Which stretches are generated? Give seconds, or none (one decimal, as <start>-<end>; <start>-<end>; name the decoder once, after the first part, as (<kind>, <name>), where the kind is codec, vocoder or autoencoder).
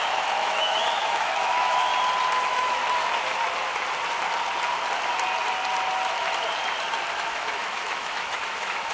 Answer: 0.0-1.9 (autoencoder, DAC-VAE); 2.4-2.8; 7.1-8.9